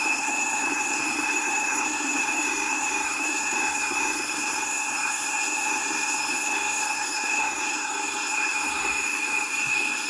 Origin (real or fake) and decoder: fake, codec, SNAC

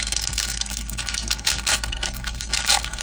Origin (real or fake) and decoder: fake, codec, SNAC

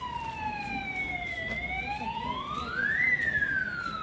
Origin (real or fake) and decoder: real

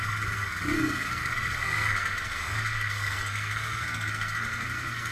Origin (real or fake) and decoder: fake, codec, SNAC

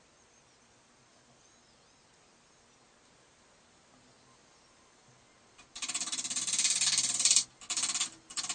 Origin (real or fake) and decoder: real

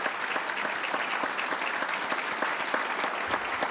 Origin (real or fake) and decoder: real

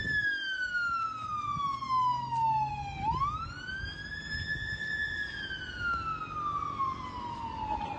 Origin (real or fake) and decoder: real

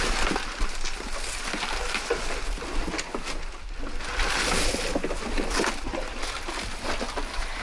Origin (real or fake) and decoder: real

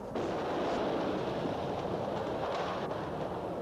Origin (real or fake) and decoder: real